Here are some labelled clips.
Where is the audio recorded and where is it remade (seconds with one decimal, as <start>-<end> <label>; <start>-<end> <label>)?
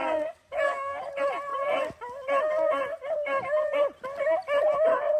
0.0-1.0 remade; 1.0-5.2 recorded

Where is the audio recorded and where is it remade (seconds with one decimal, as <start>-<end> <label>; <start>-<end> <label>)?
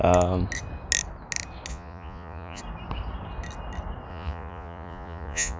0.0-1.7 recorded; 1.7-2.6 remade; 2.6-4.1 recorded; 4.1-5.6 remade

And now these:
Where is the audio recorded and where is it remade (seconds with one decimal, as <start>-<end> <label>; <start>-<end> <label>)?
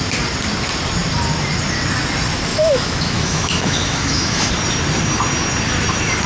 0.0-2.5 recorded; 2.5-4.5 remade; 4.5-6.3 recorded